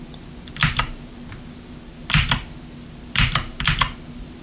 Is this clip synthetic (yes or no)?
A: no